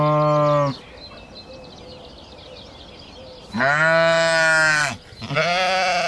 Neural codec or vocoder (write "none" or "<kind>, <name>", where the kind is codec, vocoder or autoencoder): none